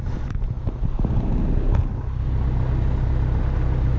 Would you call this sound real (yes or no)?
yes